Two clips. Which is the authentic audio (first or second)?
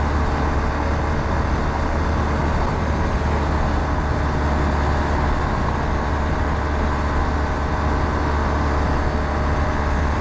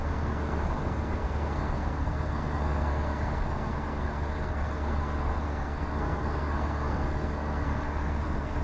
first